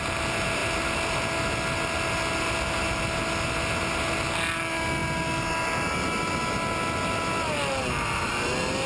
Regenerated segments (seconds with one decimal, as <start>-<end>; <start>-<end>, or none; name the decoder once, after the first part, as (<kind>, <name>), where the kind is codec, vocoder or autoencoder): none